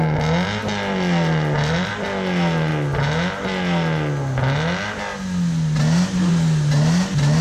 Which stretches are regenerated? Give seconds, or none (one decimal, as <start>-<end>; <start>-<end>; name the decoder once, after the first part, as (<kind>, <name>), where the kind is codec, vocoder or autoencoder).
0.6-1.9 (vocoder, BigVGAN v2)